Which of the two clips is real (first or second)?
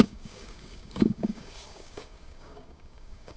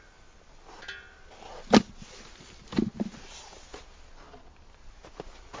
second